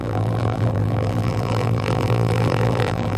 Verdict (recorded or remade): remade